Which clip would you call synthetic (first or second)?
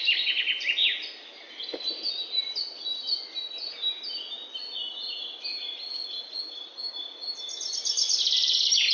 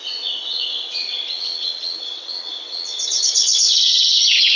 second